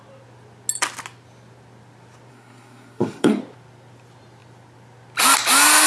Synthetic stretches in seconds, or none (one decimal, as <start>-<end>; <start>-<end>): 2.3-3.4